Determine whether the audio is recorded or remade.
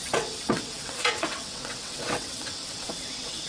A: remade